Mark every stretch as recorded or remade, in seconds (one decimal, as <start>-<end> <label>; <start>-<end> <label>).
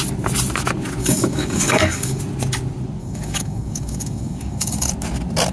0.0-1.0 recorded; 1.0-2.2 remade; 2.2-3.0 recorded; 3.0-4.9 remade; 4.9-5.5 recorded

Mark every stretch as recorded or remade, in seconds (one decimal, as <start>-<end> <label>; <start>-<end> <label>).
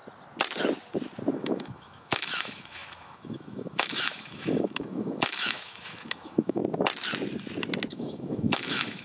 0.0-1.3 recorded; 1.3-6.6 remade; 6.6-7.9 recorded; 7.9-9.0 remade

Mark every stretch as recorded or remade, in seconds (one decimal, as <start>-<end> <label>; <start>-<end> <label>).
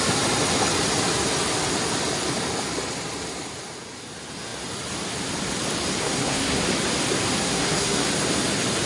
0.0-6.0 recorded; 6.0-6.6 remade; 6.6-7.4 recorded; 7.4-8.1 remade; 8.1-8.9 recorded